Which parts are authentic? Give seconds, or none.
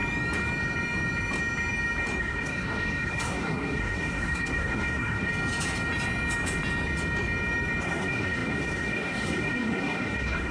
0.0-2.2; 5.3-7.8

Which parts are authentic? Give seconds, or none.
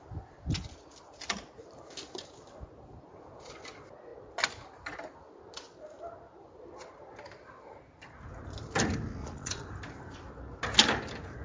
0.0-9.2; 9.7-11.4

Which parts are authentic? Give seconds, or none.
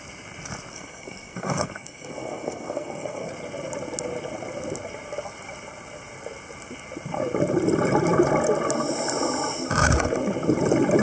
0.0-0.7; 3.3-11.0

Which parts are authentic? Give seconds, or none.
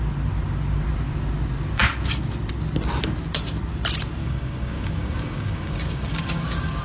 0.0-4.2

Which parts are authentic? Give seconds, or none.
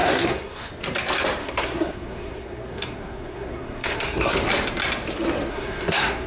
0.7-1.4; 4.3-5.5